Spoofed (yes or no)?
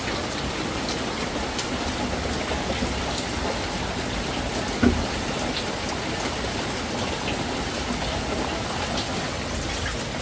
no